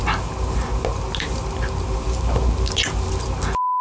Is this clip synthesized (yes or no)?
no